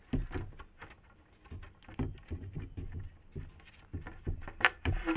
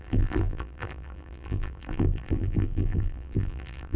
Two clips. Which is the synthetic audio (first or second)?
second